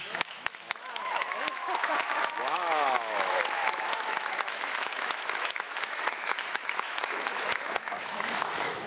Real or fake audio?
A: fake